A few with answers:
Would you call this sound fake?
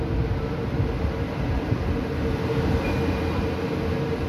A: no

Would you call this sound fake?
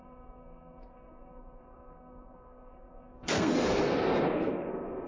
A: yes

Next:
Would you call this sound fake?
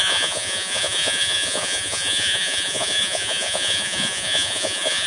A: yes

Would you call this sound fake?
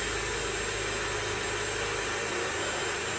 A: no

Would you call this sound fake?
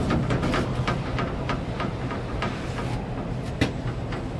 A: no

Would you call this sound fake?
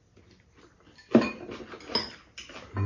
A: no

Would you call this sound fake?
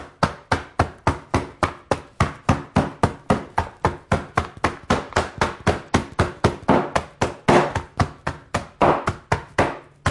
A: no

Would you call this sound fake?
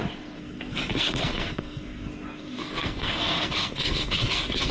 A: yes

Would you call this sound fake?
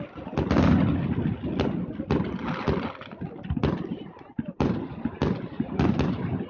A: no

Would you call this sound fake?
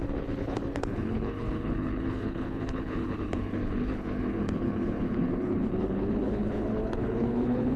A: yes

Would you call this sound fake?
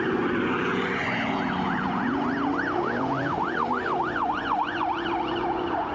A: yes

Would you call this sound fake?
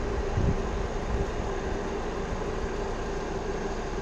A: no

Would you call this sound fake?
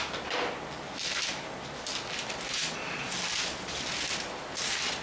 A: no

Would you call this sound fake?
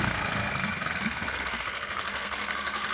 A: yes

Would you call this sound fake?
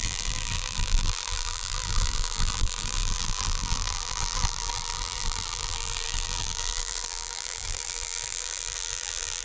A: yes